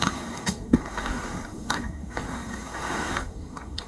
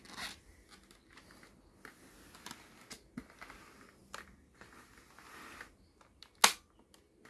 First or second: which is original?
second